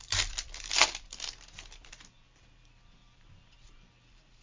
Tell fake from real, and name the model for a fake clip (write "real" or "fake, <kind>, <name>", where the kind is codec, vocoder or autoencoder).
fake, vocoder, BigVGAN v2